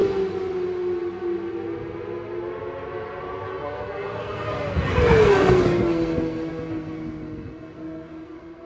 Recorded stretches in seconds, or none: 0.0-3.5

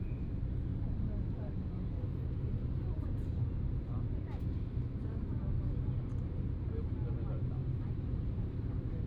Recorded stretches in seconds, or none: 0.0-0.7; 5.5-7.6